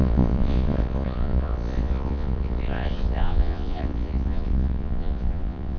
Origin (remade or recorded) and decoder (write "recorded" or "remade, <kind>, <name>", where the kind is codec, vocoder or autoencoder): remade, vocoder, Vocos